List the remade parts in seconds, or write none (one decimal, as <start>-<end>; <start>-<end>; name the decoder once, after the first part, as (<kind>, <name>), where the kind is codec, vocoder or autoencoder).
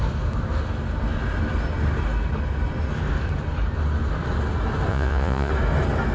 4.9-5.5 (vocoder, Vocos)